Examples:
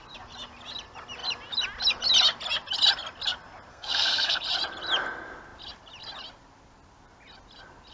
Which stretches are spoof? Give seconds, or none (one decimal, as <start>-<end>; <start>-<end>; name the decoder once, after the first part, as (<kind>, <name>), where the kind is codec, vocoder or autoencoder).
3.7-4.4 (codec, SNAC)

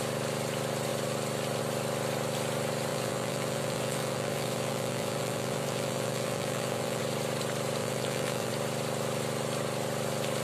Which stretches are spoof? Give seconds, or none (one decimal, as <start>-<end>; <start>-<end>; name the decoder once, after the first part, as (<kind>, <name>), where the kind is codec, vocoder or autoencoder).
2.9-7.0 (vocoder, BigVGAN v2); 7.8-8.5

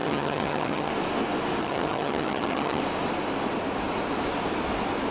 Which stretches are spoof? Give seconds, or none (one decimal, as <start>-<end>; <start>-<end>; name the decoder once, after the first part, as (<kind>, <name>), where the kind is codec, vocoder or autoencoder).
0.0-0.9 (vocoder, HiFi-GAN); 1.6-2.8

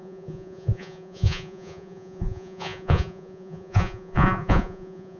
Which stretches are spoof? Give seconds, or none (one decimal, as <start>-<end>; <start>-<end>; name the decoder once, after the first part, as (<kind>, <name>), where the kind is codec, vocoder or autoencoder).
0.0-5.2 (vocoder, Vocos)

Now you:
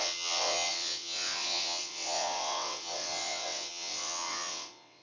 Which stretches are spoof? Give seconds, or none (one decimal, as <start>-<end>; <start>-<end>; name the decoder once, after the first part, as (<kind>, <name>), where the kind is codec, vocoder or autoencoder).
0.0-5.0 (vocoder, WaveNeXt)

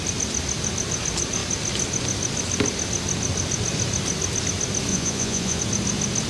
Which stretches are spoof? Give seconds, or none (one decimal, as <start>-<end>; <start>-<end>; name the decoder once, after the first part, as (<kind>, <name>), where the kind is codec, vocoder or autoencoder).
4.9-5.6 (vocoder, Vocos)

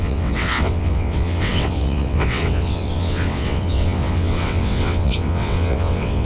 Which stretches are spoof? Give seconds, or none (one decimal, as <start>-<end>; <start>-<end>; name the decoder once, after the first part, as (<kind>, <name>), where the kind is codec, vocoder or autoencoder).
0.0-6.2 (vocoder, WaveNeXt)

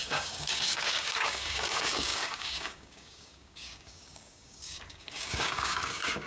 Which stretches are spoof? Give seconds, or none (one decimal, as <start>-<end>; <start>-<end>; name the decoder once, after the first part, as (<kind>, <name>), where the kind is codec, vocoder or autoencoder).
0.0-6.3 (codec, DAC)